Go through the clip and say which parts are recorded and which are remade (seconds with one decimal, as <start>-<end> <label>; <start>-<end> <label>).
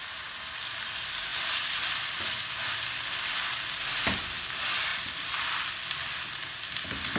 0.0-7.2 recorded